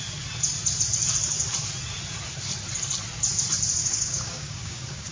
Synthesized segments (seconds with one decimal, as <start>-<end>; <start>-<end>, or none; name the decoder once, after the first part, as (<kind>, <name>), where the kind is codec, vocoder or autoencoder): 3.8-5.1 (codec, DAC)